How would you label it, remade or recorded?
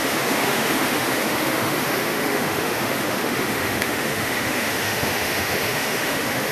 remade